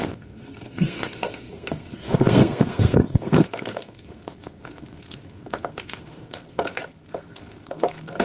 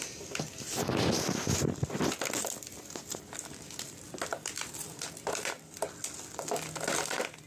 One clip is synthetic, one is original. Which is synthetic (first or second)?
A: first